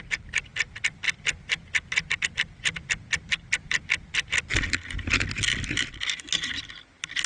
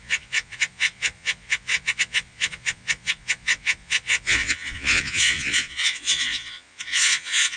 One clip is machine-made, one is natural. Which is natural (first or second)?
first